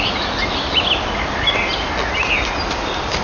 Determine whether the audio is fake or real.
real